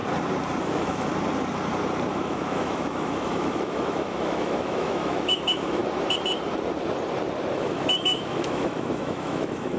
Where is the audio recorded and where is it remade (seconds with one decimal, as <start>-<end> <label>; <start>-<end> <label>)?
0.0-0.6 recorded; 0.6-1.1 remade; 1.1-2.1 recorded; 2.1-5.8 remade; 5.8-7.5 recorded; 7.5-9.8 remade